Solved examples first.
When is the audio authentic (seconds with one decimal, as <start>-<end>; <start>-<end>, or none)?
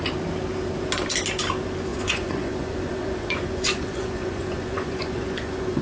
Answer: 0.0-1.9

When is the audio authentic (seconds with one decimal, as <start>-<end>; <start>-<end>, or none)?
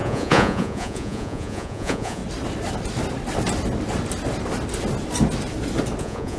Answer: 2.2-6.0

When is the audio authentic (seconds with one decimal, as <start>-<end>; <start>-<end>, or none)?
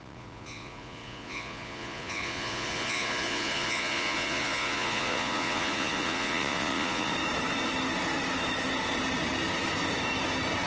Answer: 7.1-10.7